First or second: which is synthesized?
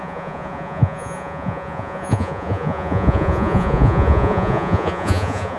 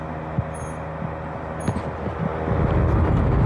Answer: first